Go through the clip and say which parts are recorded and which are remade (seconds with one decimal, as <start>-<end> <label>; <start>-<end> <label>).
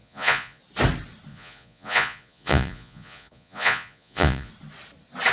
0.0-0.6 remade; 0.6-1.3 recorded; 1.3-4.5 remade; 4.5-5.3 recorded